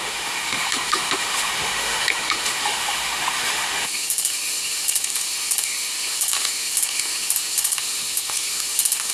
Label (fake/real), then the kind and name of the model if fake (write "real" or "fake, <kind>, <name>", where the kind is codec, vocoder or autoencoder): fake, autoencoder, DAC-VAE